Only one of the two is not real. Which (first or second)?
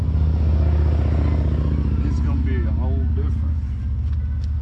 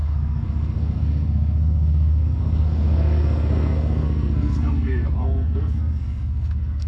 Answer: second